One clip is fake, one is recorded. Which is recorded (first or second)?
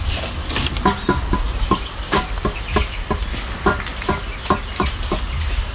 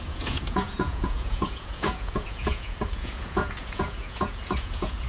first